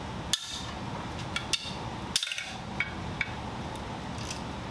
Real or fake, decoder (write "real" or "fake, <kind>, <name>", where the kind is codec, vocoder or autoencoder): real